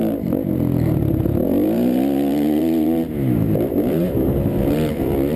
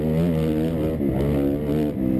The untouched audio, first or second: second